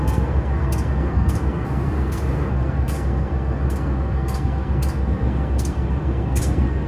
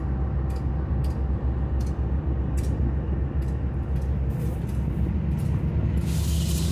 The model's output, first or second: first